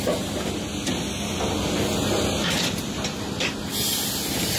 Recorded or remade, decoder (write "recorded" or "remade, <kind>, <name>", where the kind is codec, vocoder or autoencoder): recorded